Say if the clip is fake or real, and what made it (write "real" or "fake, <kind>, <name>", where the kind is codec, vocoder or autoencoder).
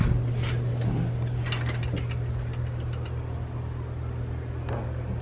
real